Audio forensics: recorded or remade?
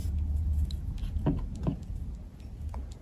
recorded